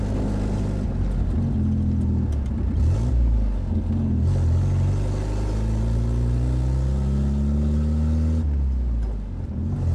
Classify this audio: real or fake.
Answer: real